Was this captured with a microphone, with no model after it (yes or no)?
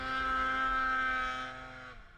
yes